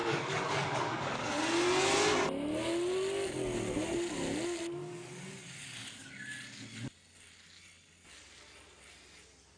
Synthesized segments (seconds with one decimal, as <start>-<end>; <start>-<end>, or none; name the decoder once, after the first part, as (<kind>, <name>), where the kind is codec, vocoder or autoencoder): 0.0-1.4 (codec, DAC); 4.8-6.1